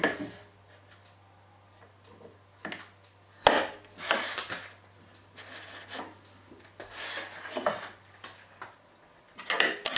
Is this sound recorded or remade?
recorded